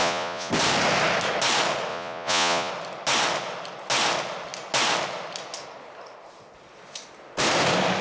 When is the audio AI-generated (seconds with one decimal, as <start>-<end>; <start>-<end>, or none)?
0.0-0.5; 1.9-2.7